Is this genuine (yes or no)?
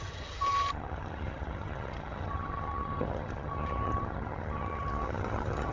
no